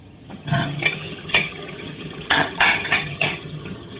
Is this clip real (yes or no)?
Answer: no